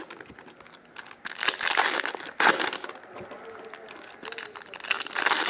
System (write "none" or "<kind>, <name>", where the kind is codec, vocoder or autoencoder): none